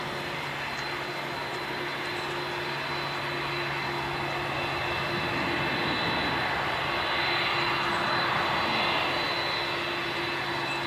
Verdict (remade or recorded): recorded